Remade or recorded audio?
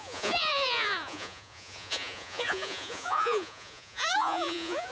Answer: remade